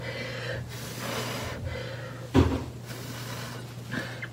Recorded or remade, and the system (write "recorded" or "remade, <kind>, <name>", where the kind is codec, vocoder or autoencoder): recorded